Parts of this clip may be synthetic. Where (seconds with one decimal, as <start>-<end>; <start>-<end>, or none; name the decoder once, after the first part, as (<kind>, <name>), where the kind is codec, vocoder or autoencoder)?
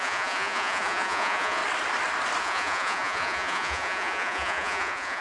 0.0-1.6 (vocoder, Vocos); 2.4-5.2